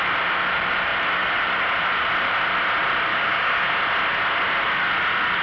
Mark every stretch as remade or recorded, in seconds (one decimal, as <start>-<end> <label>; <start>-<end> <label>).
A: 0.0-3.1 recorded; 3.1-3.7 remade; 3.7-5.4 recorded